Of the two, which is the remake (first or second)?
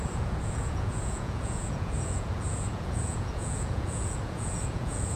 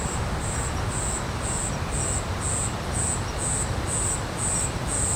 first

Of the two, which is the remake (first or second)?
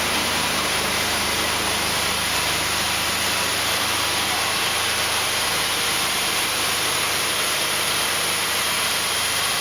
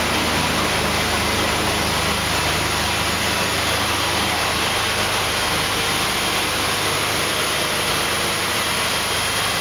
first